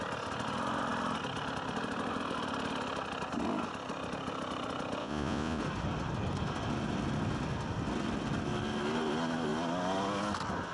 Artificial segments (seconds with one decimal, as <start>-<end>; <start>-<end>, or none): 5.0-5.6